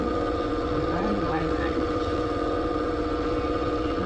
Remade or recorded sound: remade